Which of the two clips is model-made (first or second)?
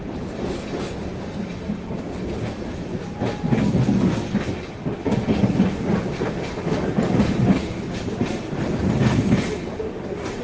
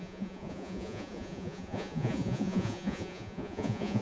second